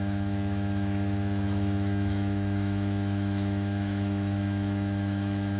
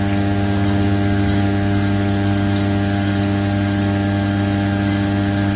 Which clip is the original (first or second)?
second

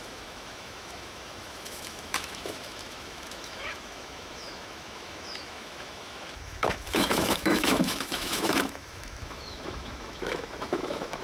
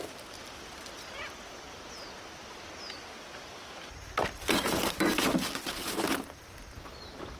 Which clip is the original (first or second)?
second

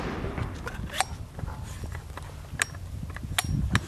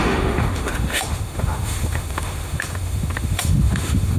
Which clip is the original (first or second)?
first